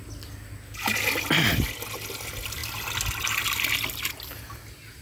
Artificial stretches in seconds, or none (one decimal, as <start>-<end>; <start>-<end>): none